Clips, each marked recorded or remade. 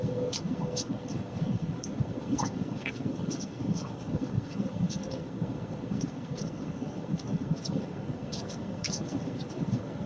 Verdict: remade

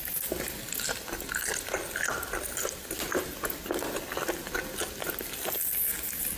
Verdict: recorded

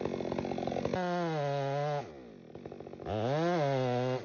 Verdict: recorded